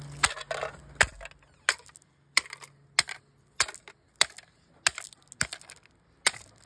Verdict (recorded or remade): recorded